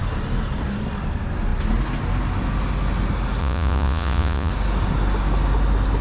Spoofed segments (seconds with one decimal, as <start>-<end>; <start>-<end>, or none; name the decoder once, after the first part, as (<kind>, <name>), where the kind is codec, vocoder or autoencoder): 3.4-4.5 (vocoder, Vocos)